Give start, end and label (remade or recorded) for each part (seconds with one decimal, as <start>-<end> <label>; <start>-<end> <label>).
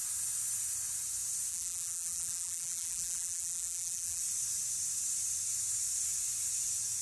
0.0-1.5 recorded; 1.5-4.2 remade; 4.2-7.0 recorded